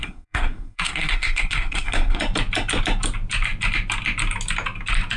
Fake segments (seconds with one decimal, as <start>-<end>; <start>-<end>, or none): 0.0-2.2

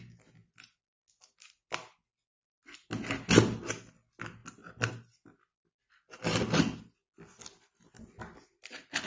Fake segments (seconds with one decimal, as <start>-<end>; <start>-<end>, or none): none

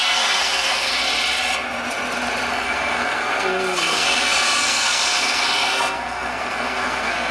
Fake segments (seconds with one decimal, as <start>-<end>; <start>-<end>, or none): 0.0-0.9; 2.5-7.3

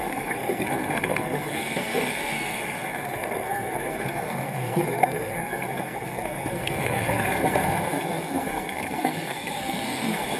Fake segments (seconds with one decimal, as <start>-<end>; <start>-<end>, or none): 0.0-10.4